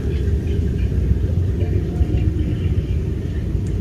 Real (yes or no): yes